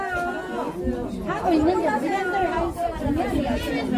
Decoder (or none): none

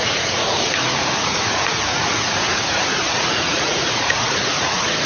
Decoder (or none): vocoder, Vocos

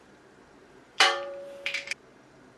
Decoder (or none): vocoder, BigVGAN v2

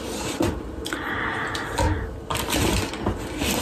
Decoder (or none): none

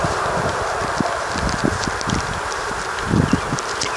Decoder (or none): none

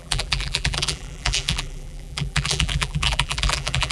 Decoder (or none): vocoder, BigVGAN v2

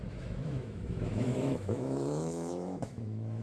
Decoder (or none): autoencoder, DAC-VAE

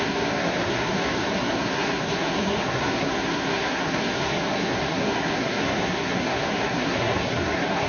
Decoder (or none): codec, SNAC